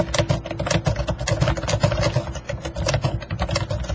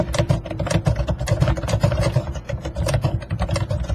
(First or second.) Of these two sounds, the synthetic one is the second